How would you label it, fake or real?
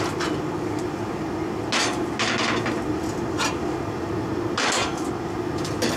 real